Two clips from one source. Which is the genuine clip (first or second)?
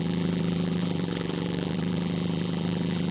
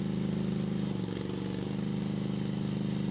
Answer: second